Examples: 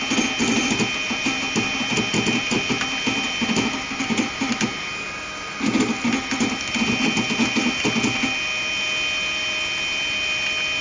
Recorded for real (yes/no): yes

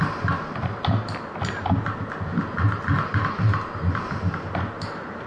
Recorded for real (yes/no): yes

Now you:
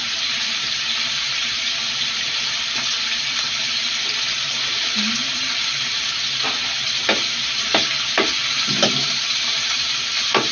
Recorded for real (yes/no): no